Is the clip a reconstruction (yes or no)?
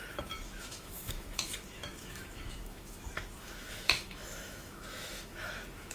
yes